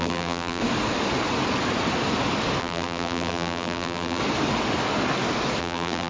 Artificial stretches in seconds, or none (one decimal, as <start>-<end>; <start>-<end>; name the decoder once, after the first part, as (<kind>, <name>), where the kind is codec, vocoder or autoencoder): 0.0-0.6 (vocoder, BigVGAN v2); 2.6-4.2; 5.6-6.1